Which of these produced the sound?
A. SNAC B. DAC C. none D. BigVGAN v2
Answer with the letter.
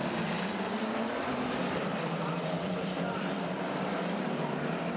D